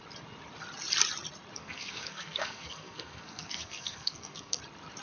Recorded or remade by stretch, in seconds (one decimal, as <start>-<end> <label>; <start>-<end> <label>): 0.0-1.6 recorded; 1.6-4.6 remade; 4.6-5.0 recorded